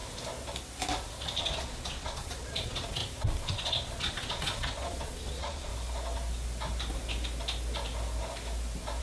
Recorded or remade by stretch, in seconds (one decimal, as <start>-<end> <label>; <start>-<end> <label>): 0.0-1.4 recorded; 1.4-3.0 remade; 3.0-3.5 recorded; 3.5-5.7 remade; 5.7-9.0 recorded